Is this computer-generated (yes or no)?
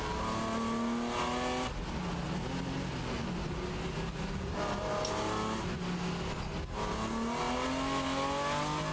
no